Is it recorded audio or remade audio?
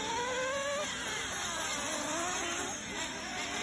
recorded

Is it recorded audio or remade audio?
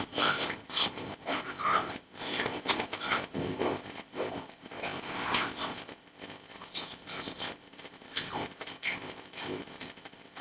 remade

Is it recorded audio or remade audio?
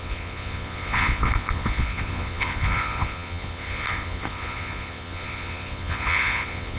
remade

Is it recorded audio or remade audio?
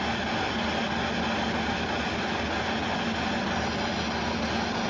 recorded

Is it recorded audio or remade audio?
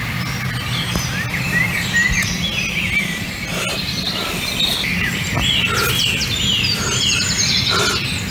recorded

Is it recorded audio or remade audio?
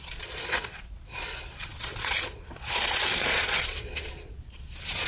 remade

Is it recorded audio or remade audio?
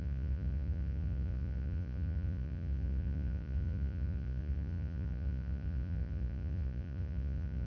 remade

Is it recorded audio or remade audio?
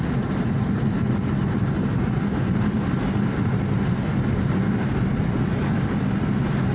recorded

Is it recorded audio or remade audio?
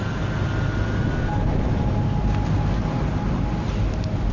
recorded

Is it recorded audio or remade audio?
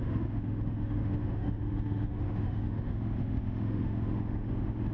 remade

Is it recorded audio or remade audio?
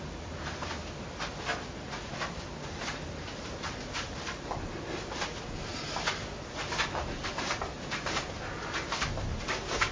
remade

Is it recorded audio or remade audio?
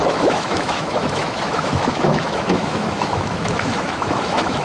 remade